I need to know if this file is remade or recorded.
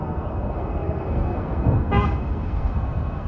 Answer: remade